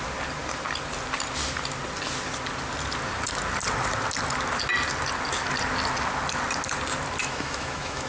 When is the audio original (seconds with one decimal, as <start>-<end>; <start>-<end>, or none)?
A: 0.0-7.2